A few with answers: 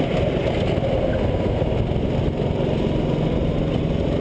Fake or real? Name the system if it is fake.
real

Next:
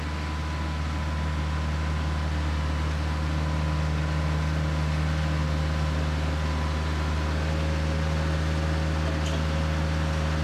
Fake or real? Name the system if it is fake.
real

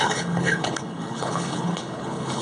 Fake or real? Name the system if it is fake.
fake, codec, HILCodec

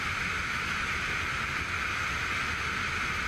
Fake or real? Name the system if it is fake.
real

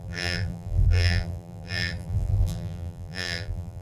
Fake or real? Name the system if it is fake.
fake, vocoder, BigVGAN v2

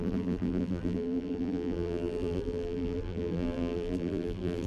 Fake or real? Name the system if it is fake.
fake, vocoder, BigVGAN v2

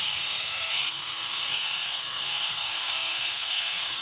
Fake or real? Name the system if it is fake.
fake, codec, SNAC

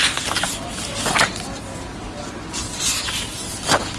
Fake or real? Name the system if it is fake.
real